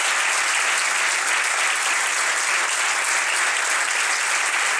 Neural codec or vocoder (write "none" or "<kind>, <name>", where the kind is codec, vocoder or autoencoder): none